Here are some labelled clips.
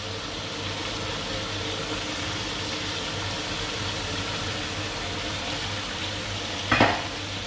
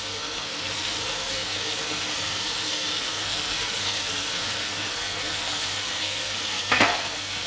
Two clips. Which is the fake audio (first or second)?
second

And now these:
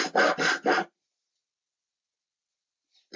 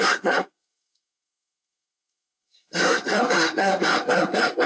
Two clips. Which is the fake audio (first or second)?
second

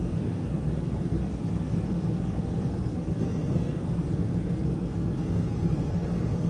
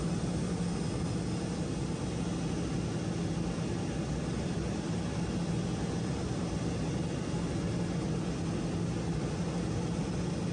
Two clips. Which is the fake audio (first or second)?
first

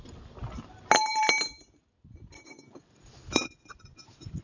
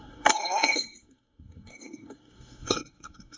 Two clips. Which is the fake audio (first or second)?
second